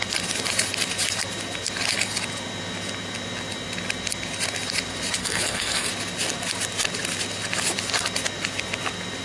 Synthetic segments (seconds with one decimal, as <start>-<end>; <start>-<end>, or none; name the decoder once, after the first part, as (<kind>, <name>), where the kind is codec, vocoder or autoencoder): 5.2-5.9 (codec, SNAC)